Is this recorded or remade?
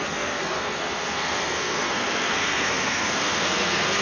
remade